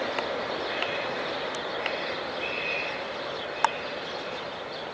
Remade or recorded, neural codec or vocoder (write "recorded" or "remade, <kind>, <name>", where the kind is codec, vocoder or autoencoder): recorded